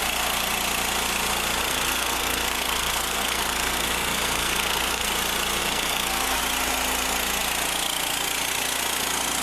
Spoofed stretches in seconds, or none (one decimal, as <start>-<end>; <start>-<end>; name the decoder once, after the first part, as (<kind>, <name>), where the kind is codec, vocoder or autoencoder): 1.7-5.1 (codec, SNAC); 5.6-6.4